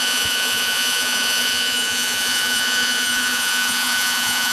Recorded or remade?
remade